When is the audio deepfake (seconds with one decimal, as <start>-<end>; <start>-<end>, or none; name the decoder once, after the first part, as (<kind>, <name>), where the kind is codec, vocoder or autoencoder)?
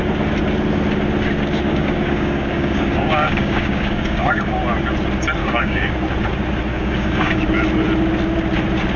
1.7-4.6 (codec, DAC); 5.4-5.9; 6.7-7.4